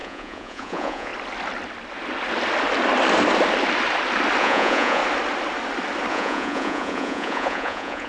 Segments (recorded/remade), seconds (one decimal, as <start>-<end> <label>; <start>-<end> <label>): 0.0-1.1 remade; 1.1-4.4 recorded; 4.4-5.0 remade; 5.0-6.1 recorded; 6.1-8.1 remade